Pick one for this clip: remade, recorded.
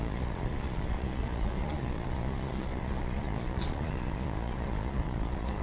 remade